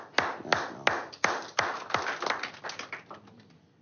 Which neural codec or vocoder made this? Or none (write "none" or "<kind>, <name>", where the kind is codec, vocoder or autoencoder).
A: none